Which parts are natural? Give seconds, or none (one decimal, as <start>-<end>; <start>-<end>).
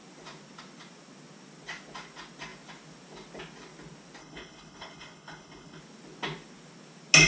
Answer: 0.0-4.2; 5.8-7.3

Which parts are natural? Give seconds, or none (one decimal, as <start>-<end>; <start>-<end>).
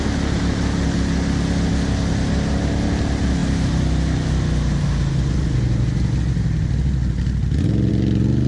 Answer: 0.0-8.5